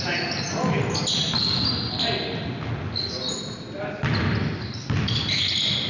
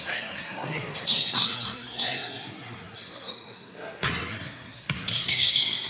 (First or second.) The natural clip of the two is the first